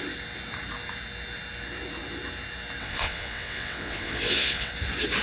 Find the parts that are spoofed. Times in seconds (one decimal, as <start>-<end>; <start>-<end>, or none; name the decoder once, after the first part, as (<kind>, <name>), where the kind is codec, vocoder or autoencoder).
2.8-4.7 (vocoder, WaveNeXt)